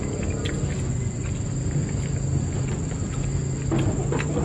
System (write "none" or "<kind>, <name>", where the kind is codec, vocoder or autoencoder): none